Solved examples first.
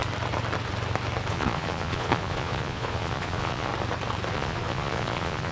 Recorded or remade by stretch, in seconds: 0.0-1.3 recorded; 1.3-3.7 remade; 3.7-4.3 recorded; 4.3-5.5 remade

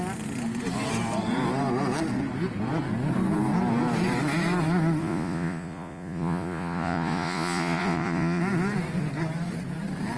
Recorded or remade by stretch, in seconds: 0.0-5.0 recorded; 5.0-8.4 remade; 8.4-10.2 recorded

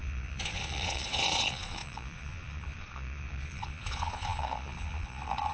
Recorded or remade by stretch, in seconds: 0.0-5.5 remade

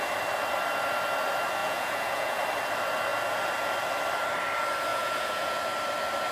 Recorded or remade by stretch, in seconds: 0.0-1.6 recorded; 1.6-2.4 remade; 2.4-4.9 recorded; 4.9-5.6 remade; 5.6-6.3 recorded

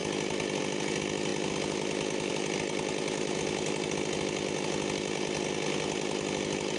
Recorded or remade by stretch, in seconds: 0.0-6.8 recorded

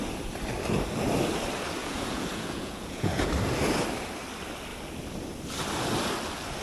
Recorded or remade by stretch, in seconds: 0.0-1.8 recorded; 1.8-3.3 remade; 3.3-6.6 recorded

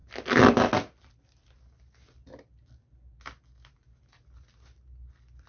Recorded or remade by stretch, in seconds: 0.0-5.5 recorded

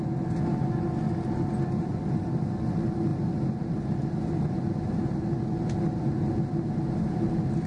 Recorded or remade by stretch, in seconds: 0.0-7.7 recorded